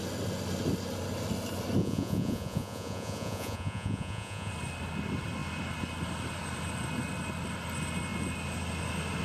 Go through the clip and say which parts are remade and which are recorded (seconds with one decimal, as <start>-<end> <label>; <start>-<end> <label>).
0.0-1.8 recorded; 1.8-4.5 remade; 4.5-9.2 recorded